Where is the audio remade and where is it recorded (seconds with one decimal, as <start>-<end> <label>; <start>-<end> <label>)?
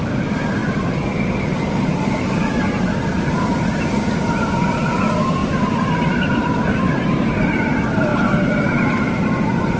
0.0-0.6 recorded; 0.6-3.2 remade; 3.2-5.4 recorded; 5.4-7.6 remade; 7.6-9.8 recorded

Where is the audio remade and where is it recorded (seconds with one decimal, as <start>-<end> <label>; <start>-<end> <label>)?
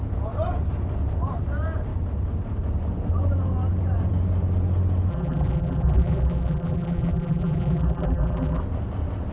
0.0-5.1 recorded; 5.1-8.6 remade; 8.6-9.3 recorded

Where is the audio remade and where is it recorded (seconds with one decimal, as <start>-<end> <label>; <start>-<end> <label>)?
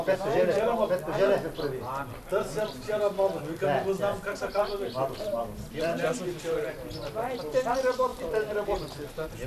0.0-8.1 recorded; 8.1-9.1 remade; 9.1-9.5 recorded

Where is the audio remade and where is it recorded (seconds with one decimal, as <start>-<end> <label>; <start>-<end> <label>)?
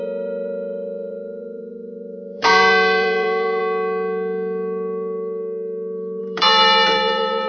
0.0-3.6 remade; 3.6-6.2 recorded; 6.2-7.5 remade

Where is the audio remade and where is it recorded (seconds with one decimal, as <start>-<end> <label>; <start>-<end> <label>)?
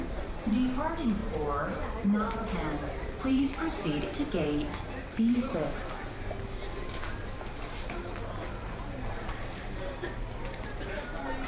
0.0-1.2 recorded; 1.2-5.9 remade; 5.9-9.2 recorded; 9.2-11.0 remade; 11.0-11.5 recorded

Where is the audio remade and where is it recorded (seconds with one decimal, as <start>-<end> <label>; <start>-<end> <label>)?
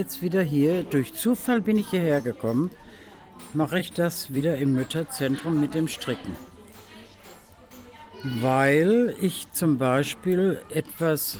0.0-1.4 recorded; 1.4-2.9 remade; 2.9-3.8 recorded; 3.8-4.4 remade; 4.4-11.4 recorded